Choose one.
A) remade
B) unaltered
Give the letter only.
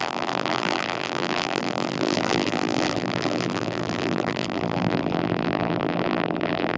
A